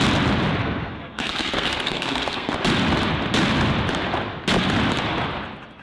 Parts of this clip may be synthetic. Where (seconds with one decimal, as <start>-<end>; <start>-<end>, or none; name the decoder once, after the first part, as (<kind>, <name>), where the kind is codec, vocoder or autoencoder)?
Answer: 0.6-2.5 (codec, SNAC)